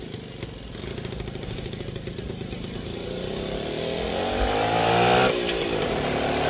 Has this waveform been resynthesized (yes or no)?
no